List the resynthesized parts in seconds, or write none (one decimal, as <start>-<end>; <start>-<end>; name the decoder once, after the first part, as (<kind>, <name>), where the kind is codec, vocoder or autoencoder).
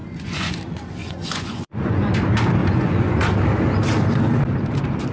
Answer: 0.0-0.6 (vocoder, Vocos); 1.0-2.1; 2.6-3.2